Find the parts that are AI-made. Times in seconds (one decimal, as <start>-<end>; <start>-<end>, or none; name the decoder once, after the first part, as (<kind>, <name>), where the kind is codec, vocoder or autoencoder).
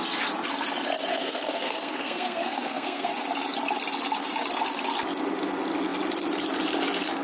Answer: 1.1-3.1 (codec, SNAC)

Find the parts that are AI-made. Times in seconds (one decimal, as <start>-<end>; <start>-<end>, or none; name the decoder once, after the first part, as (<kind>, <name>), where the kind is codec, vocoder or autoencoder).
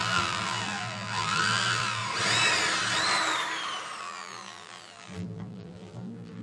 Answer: 0.0-2.0 (vocoder, BigVGAN v2); 4.0-6.4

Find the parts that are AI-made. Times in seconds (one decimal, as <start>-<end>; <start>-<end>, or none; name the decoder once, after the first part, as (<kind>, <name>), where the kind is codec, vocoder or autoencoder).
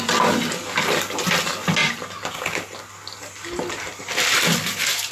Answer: none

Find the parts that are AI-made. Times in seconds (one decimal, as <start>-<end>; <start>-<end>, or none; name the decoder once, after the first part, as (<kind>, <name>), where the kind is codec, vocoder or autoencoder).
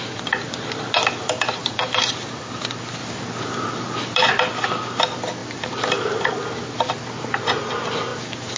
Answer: 1.6-2.6 (vocoder, BigVGAN v2); 5.4-6.3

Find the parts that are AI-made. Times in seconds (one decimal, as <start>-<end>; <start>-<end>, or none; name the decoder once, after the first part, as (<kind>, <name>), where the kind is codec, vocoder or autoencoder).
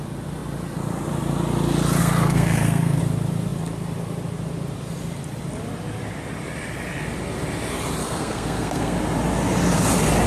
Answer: 2.0-3.0 (codec, SNAC); 8.0-9.0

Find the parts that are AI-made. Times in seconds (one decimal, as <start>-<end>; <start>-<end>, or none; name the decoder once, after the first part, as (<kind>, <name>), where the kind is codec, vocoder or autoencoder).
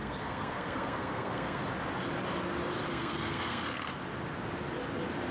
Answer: 0.0-1.6 (codec, SNAC); 2.9-3.9